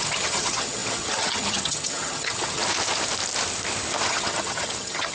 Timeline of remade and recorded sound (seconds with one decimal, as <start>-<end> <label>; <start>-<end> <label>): 0.0-2.6 remade; 2.6-4.1 recorded; 4.1-5.1 remade